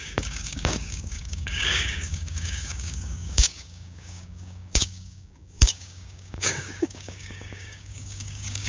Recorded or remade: remade